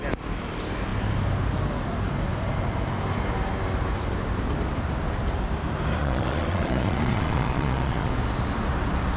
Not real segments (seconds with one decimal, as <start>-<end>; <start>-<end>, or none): 6.0-8.1